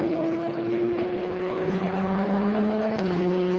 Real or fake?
fake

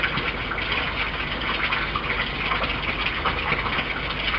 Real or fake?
real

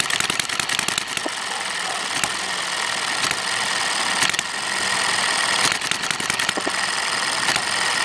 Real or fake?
real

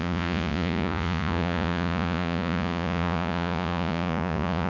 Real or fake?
fake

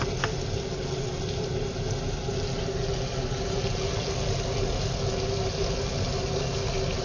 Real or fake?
real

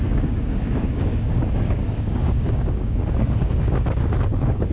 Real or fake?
fake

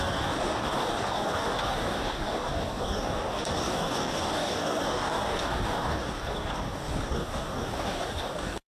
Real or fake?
fake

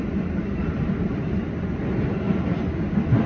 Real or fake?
real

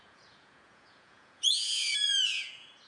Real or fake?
fake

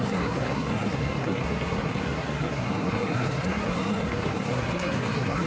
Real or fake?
fake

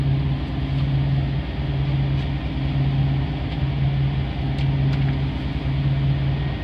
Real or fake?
real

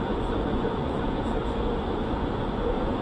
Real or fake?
fake